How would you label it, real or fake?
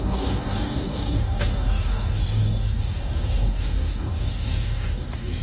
fake